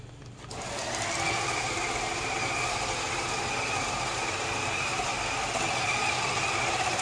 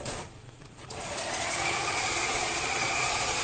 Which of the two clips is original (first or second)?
first